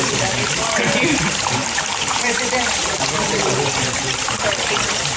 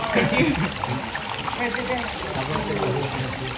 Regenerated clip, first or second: first